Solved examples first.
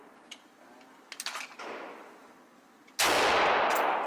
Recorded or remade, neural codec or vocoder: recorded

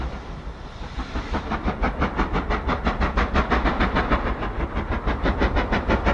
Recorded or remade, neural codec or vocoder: recorded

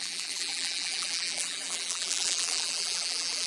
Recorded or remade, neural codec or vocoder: remade, vocoder, BigVGAN v2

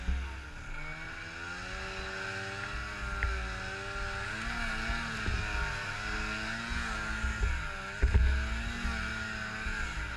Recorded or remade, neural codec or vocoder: recorded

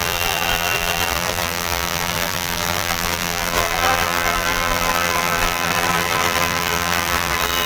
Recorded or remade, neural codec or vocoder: remade, vocoder, BigVGAN v2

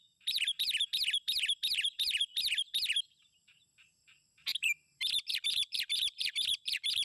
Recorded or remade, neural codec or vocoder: remade, vocoder, BigVGAN v2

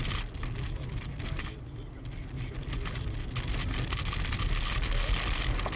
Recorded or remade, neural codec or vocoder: recorded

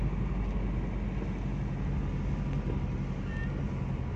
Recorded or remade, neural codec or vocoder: recorded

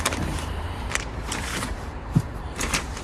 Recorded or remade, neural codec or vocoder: remade, vocoder, BigVGAN v2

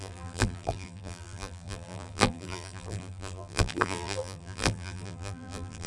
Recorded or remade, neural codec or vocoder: remade, vocoder, BigVGAN v2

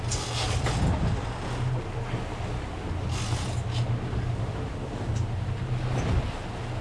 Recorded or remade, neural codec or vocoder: recorded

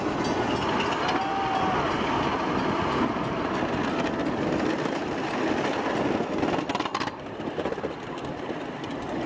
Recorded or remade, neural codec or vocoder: recorded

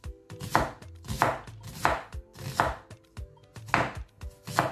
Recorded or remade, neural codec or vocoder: recorded